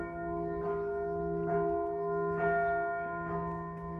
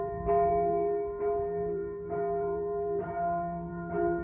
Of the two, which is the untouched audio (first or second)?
first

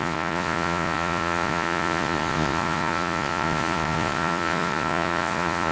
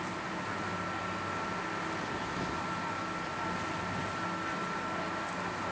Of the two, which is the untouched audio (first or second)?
second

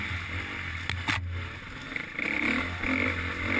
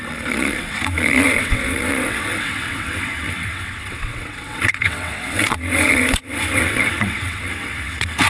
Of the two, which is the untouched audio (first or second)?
first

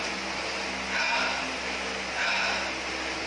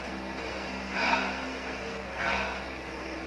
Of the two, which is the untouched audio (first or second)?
first